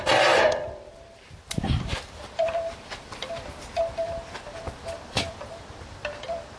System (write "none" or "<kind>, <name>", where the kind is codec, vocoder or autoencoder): vocoder, BigVGAN v2